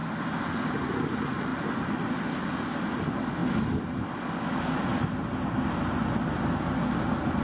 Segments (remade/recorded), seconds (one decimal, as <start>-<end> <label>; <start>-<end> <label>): 0.0-7.4 recorded